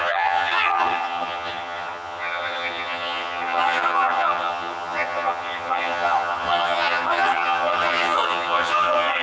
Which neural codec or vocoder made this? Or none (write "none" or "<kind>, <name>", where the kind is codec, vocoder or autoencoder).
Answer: vocoder, HiFi-GAN